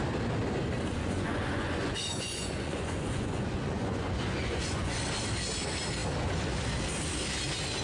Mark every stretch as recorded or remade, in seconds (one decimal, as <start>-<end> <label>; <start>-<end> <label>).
0.0-0.9 recorded; 0.9-5.0 remade; 5.0-7.8 recorded